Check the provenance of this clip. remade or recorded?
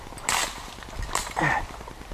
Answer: recorded